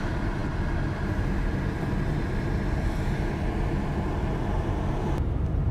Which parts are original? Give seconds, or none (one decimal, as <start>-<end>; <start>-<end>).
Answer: 0.0-5.7